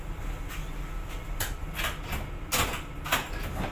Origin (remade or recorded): recorded